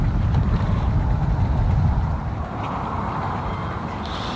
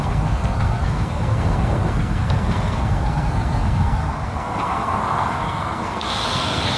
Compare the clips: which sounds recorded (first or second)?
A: first